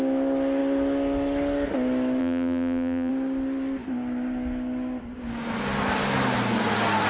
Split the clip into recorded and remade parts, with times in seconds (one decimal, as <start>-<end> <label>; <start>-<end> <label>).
0.0-2.2 recorded; 2.2-3.1 remade; 3.1-7.1 recorded